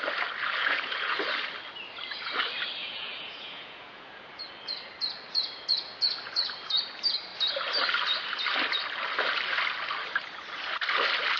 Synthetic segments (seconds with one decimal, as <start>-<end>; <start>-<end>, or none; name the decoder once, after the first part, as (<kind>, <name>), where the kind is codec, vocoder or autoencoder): 0.6-1.2 (vocoder, Vocos); 2.8-4.3